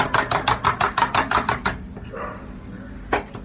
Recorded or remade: recorded